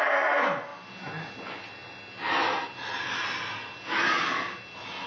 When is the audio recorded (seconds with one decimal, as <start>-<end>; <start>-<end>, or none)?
0.0-5.1

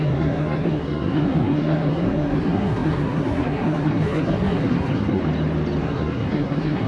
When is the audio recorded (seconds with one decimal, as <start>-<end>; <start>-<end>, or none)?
5.2-5.8

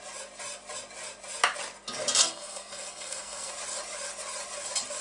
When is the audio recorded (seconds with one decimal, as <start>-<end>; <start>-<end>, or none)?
0.0-2.2; 3.5-5.0

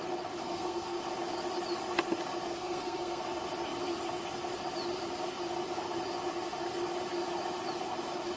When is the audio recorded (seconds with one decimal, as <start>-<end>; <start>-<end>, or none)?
0.0-0.4; 1.0-2.5; 3.2-8.4

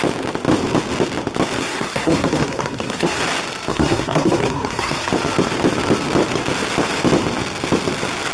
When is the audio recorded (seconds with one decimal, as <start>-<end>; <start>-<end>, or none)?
0.0-1.6; 3.2-3.7; 5.1-8.3

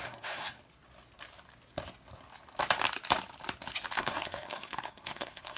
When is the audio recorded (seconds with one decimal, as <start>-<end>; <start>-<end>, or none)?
0.6-4.0